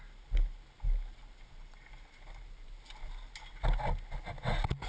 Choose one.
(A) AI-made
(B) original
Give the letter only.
B